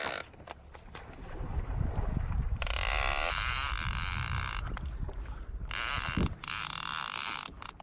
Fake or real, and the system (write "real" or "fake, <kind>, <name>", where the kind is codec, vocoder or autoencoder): real